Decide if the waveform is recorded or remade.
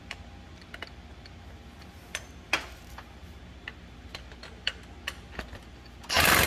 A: recorded